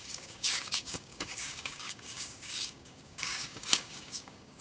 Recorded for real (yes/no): no